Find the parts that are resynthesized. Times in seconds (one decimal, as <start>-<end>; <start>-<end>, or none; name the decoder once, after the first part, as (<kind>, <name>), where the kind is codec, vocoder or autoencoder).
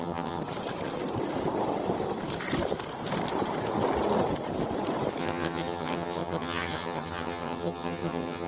0.0-0.4 (vocoder, HiFi-GAN); 5.2-8.5